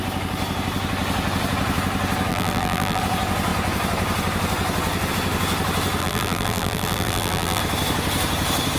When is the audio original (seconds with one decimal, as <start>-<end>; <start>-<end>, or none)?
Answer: 0.0-2.3; 3.0-6.0; 7.6-8.8